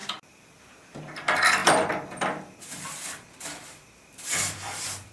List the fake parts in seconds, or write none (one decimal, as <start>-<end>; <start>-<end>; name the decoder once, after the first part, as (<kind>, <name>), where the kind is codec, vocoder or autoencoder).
0.0-0.7 (vocoder, BigVGAN v2); 1.6-5.1